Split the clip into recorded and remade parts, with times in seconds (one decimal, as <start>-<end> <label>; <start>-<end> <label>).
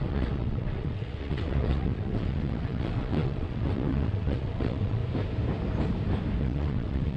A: 0.0-5.0 remade; 5.0-6.4 recorded; 6.4-7.2 remade